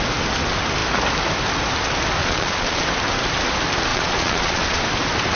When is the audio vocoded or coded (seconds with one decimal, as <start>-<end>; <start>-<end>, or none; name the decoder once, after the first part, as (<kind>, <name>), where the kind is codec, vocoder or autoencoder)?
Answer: 2.2-2.8 (vocoder, Vocos); 3.9-4.8